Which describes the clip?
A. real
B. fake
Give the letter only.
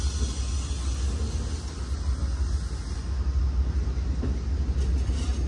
A